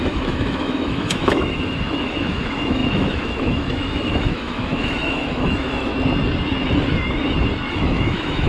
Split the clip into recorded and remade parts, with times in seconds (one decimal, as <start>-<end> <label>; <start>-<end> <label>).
0.0-5.9 remade; 5.9-7.7 recorded; 7.7-8.5 remade